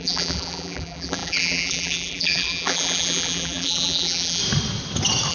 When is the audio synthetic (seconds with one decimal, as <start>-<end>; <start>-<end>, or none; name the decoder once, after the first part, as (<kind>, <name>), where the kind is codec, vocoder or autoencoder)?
0.0-4.4 (vocoder, BigVGAN v2)